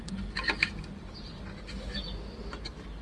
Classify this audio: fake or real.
real